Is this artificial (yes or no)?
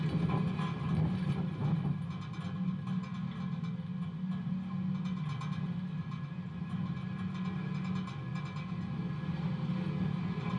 no